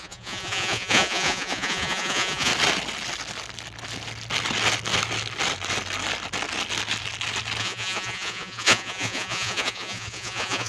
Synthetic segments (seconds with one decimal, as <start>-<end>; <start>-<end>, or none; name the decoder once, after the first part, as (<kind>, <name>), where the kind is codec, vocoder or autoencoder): 0.0-2.5 (vocoder, Vocos); 7.6-10.7